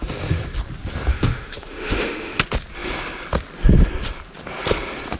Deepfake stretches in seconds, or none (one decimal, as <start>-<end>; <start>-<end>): 1.1-2.4